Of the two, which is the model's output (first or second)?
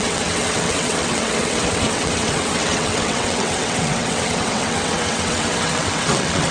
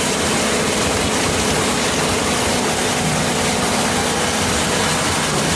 first